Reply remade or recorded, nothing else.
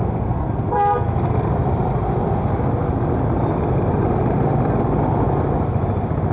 recorded